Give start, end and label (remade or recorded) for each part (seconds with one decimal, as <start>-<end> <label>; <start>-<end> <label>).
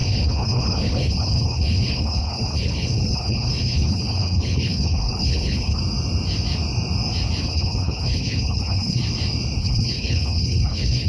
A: 0.0-5.8 remade; 5.8-7.4 recorded; 7.4-9.0 remade; 9.0-9.6 recorded; 9.6-11.1 remade